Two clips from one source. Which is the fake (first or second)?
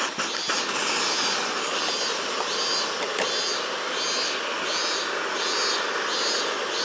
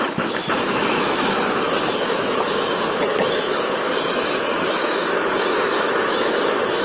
second